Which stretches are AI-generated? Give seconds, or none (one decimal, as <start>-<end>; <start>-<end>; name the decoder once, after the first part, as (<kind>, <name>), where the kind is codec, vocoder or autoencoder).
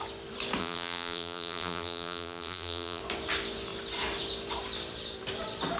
0.6-3.0 (vocoder, BigVGAN v2)